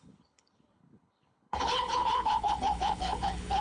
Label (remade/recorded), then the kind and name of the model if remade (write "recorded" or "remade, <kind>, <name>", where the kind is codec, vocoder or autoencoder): remade, codec, HILCodec